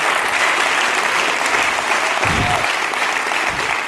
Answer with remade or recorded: recorded